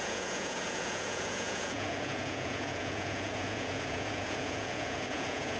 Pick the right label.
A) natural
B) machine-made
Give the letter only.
B